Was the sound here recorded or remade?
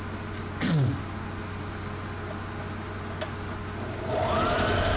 recorded